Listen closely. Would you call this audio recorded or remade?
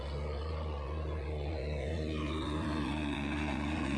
remade